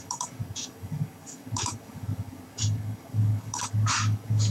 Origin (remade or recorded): remade